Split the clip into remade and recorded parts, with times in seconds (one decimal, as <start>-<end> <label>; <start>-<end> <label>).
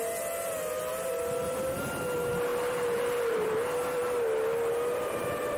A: 0.0-2.5 recorded; 2.5-3.5 remade; 3.5-5.6 recorded